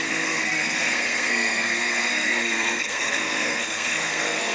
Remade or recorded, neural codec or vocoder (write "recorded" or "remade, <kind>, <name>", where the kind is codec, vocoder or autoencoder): remade, codec, SNAC